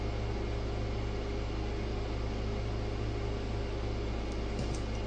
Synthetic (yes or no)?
no